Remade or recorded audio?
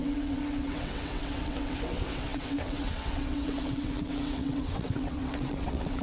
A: remade